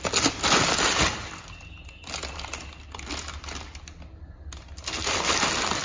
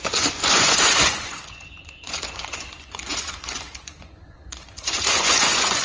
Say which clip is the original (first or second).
first